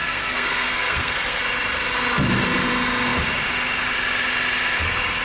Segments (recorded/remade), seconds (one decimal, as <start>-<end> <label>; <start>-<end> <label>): 0.0-1.4 remade; 1.4-5.2 recorded